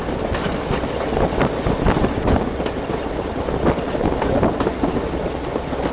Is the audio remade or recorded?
recorded